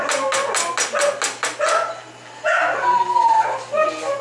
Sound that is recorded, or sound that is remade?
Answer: recorded